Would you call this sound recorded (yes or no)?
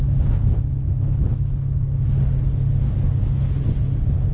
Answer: yes